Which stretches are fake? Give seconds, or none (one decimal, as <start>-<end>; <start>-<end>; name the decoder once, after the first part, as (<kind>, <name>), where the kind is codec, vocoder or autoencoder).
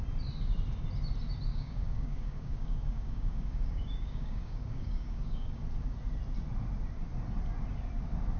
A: 1.5-5.6 (codec, DAC)